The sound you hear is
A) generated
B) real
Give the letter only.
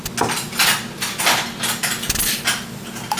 B